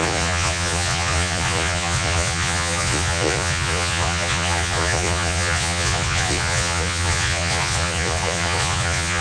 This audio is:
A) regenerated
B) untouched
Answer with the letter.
A